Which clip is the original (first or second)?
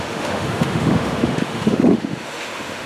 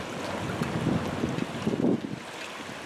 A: second